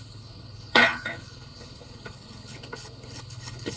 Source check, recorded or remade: remade